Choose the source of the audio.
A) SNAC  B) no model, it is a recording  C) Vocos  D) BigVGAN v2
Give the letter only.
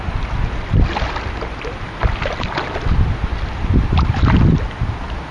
B